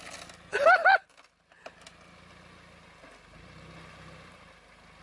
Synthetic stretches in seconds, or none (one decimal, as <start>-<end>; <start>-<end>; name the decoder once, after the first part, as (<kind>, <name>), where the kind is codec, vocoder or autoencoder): none